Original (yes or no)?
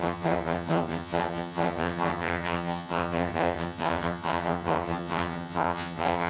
no